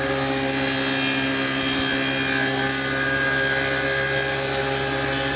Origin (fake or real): real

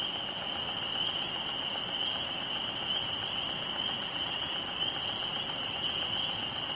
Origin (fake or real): real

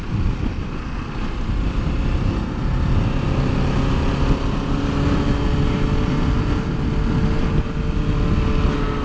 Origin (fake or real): real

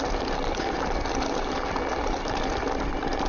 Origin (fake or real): real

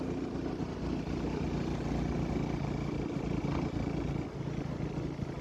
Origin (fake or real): real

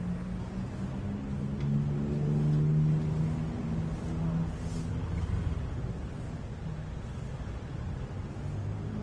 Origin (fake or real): real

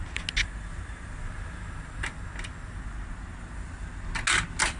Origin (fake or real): real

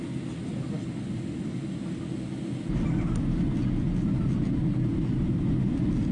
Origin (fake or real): real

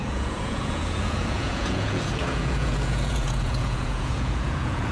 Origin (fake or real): fake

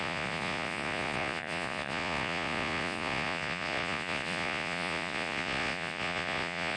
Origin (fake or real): fake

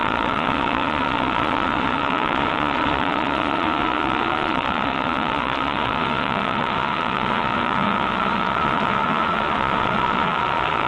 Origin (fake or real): fake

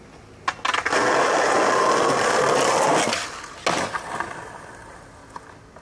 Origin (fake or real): real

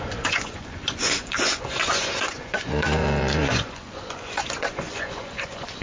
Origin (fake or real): fake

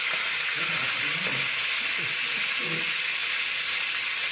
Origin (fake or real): real